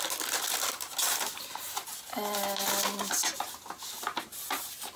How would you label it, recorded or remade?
recorded